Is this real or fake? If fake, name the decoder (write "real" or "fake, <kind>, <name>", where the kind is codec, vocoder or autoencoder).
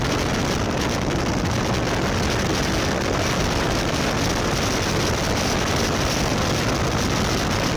real